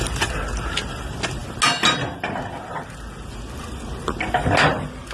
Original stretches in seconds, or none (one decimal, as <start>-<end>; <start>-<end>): 0.0-5.1